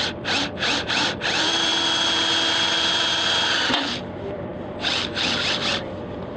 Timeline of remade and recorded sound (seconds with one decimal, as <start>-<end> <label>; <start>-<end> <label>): 0.0-1.7 remade; 1.7-3.8 recorded; 3.8-6.4 remade